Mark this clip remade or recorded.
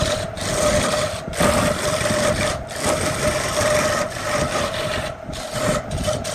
recorded